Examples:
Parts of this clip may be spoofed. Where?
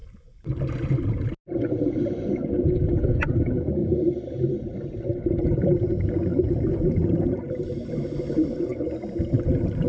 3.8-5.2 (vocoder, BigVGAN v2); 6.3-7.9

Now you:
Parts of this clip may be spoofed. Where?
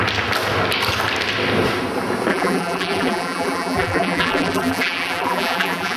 2.3-6.0 (vocoder, BigVGAN v2)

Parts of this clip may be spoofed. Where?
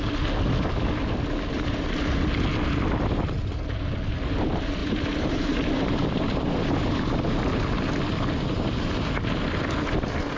4.8-7.1 (vocoder, BigVGAN v2)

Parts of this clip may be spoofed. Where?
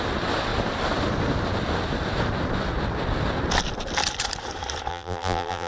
4.9-5.7 (vocoder, BigVGAN v2)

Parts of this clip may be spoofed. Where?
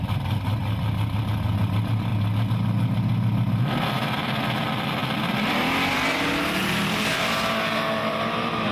6.1-8.7 (vocoder, BigVGAN v2)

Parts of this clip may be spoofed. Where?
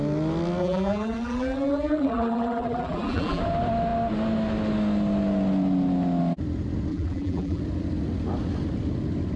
0.6-3.4 (vocoder, BigVGAN v2); 6.9-7.6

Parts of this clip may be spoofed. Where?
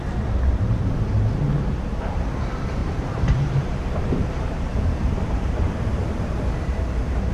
2.8-6.5 (vocoder, BigVGAN v2)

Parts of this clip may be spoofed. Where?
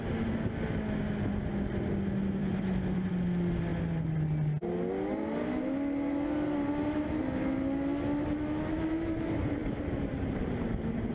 2.4-3.1 (vocoder, BigVGAN v2); 9.6-11.1